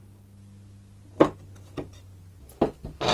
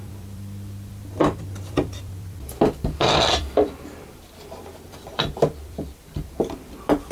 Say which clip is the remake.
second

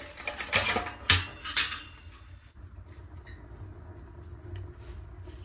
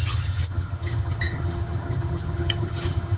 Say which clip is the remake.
second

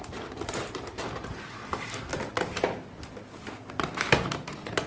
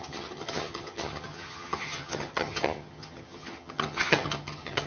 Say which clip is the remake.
second